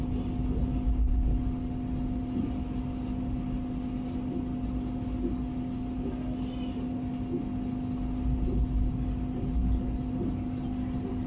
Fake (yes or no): no